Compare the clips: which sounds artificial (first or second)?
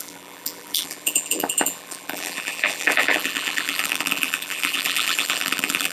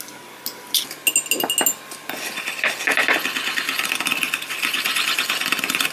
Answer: first